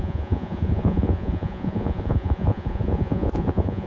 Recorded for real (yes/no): no